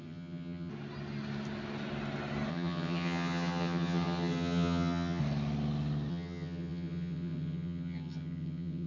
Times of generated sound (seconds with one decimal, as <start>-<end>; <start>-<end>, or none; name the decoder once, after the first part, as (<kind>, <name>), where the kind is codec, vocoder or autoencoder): 0.0-0.7 (vocoder, HiFi-GAN); 2.5-5.2; 6.1-8.9